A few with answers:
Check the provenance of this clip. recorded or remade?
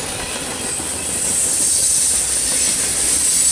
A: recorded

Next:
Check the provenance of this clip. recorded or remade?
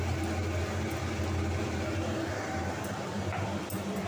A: recorded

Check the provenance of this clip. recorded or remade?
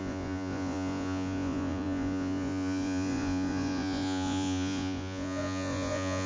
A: remade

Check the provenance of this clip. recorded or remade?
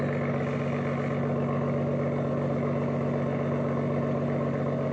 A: recorded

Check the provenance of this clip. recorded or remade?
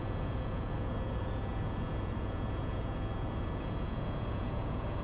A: remade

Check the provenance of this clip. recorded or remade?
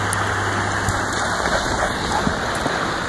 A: recorded